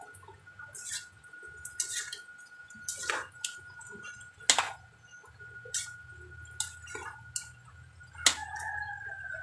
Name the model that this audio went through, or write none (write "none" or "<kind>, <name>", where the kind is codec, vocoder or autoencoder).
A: none